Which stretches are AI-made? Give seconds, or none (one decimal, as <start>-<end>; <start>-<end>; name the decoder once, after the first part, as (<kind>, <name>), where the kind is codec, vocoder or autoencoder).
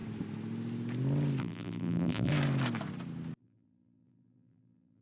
1.4-2.3 (vocoder, BigVGAN v2); 3.4-5.0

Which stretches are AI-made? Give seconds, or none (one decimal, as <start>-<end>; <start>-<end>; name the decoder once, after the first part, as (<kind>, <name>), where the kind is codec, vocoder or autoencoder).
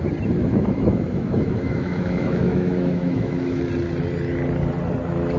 0.4-3.6 (autoencoder, DAC-VAE)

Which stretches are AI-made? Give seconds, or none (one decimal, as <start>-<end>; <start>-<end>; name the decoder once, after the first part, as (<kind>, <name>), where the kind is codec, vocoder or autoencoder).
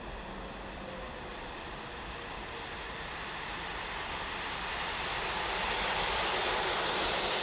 1.3-1.8 (vocoder, BigVGAN v2)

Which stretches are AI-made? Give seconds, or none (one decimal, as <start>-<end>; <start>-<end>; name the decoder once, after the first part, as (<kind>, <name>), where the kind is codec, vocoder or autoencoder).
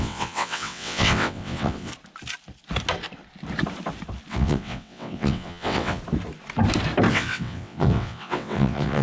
0.0-1.9 (vocoder, WaveNeXt); 4.3-6.0; 7.1-9.0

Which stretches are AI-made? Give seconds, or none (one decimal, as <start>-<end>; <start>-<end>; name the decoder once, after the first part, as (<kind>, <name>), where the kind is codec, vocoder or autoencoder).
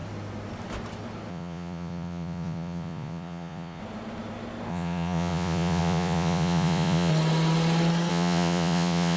1.3-3.8 (vocoder, Vocos); 4.7-7.1; 8.1-9.2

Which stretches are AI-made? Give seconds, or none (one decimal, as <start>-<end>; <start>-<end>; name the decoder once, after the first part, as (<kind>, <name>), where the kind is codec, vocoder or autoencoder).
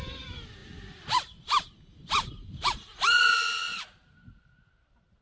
2.2-3.1 (vocoder, BigVGAN v2); 3.7-5.2